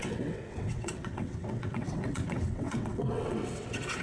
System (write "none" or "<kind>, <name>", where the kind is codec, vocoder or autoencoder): vocoder, WaveNeXt